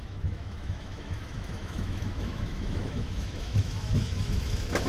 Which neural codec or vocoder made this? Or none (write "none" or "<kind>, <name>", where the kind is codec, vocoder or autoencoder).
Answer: autoencoder, DAC-VAE